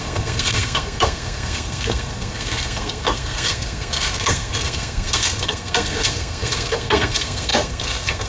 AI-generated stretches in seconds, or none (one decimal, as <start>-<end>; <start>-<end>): 0.0-8.3